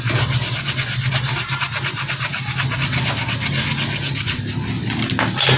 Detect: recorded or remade recorded